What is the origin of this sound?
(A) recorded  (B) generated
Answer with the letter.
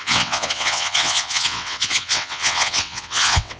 B